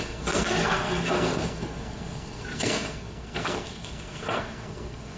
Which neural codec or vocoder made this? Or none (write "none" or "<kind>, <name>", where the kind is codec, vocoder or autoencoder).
codec, SNAC